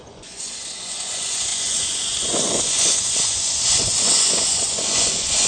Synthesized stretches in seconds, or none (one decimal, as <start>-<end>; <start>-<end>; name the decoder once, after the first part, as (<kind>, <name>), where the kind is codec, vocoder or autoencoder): 0.0-5.5 (vocoder, Vocos)